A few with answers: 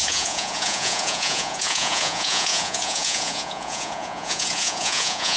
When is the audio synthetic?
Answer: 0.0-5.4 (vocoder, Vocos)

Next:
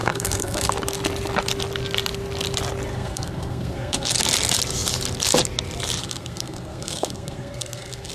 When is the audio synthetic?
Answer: 0.0-0.7 (codec, SNAC); 2.9-4.2; 6.0-8.1

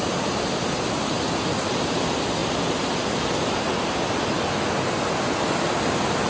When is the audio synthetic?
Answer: none

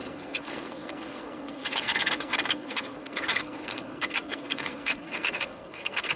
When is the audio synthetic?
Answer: 0.0-6.2 (codec, SNAC)